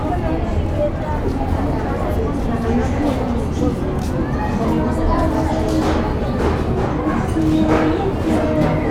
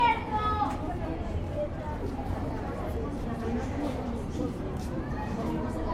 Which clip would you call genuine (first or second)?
first